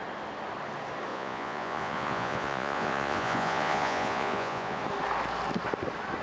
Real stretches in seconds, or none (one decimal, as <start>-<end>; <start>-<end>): 0.0-1.1; 4.8-6.2